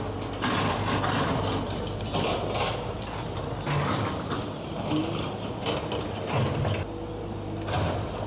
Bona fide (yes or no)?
yes